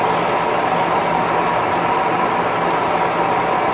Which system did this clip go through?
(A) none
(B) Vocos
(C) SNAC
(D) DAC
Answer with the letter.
A